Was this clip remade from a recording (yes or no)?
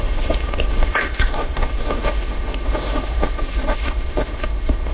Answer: yes